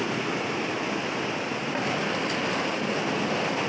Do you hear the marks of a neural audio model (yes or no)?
no